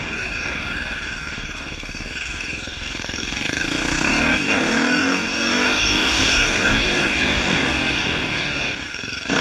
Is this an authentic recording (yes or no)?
no